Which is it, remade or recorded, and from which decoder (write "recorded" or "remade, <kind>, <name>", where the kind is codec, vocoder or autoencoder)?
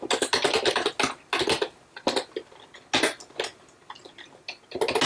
recorded